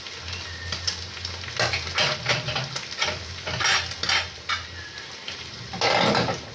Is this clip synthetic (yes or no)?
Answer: no